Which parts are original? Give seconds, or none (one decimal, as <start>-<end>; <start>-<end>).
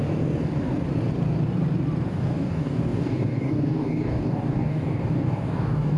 0.0-2.1